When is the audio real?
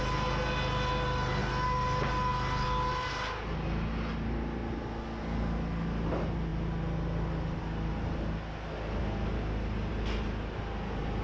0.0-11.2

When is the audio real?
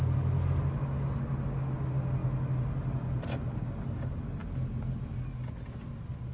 0.0-6.3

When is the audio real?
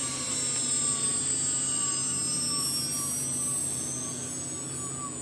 0.0-3.6; 4.3-5.2